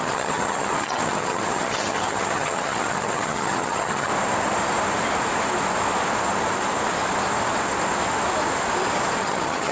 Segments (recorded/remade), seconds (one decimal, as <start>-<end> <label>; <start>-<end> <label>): 0.0-4.1 remade; 4.1-9.2 recorded; 9.2-9.7 remade